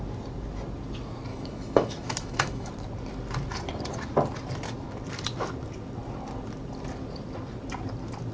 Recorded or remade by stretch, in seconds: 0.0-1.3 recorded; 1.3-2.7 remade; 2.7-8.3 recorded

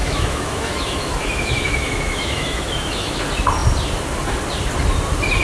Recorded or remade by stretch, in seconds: 0.0-3.2 remade; 3.2-5.4 recorded

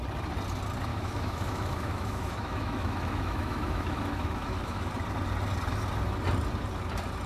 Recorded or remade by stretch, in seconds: 0.0-0.9 recorded; 0.9-4.9 remade; 4.9-7.3 recorded

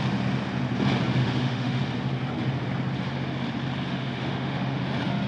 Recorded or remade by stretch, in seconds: 0.0-1.2 recorded; 1.2-1.8 remade; 1.8-3.9 recorded; 3.9-4.8 remade; 4.8-5.3 recorded

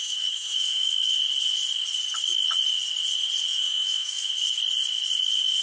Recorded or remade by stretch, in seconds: 0.0-1.1 remade; 1.1-3.5 recorded; 3.5-4.3 remade; 4.3-5.6 recorded